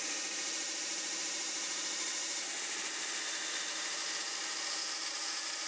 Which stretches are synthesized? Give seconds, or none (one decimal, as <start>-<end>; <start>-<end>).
0.0-2.2; 3.5-4.0